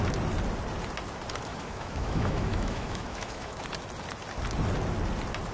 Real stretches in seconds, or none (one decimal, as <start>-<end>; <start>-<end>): 0.0-1.5; 3.6-5.5